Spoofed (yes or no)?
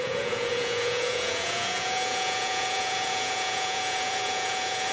yes